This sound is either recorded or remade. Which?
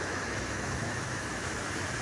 remade